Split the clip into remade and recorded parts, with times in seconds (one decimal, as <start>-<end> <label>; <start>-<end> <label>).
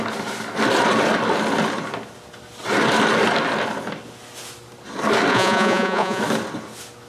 0.0-5.3 recorded; 5.3-6.2 remade; 6.2-7.1 recorded